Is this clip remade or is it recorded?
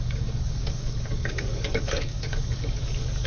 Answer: remade